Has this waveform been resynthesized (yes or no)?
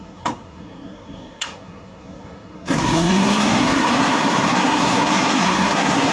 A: yes